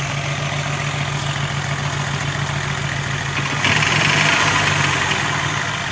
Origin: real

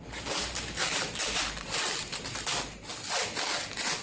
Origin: real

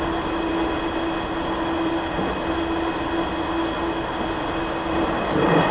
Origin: real